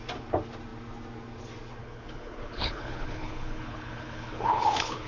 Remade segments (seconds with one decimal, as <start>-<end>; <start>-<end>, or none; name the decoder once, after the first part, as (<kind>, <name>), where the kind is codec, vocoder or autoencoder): 1.8-5.1 (codec, HILCodec)